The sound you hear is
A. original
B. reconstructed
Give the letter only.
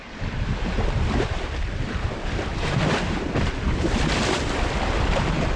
B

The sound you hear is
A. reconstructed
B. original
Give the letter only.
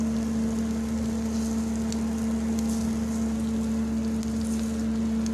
B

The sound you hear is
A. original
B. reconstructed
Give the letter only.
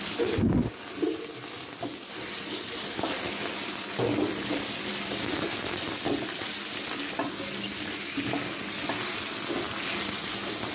A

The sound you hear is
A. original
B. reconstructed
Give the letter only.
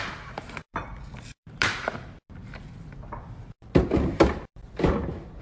B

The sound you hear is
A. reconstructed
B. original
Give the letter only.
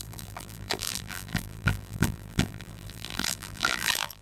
A